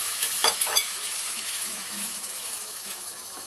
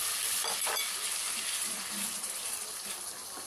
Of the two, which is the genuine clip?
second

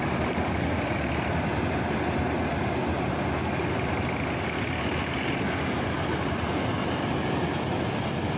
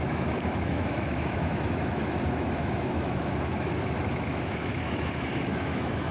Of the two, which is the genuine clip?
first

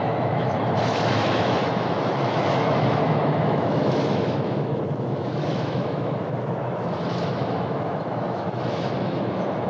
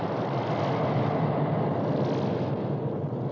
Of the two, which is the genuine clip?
second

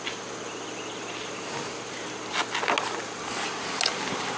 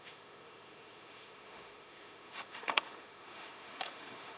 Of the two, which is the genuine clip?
first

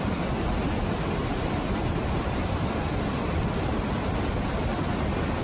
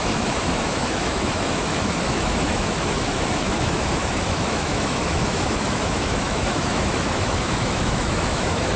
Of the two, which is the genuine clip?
first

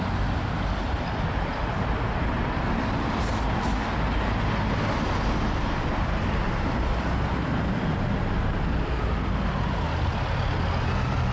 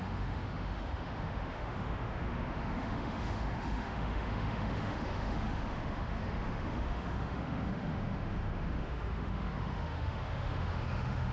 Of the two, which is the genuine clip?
first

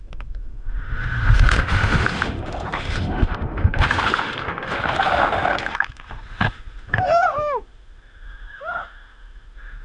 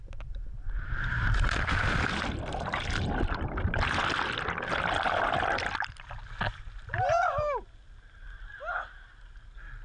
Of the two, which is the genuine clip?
second